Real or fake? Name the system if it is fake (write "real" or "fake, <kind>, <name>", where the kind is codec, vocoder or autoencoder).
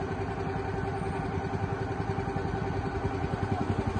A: real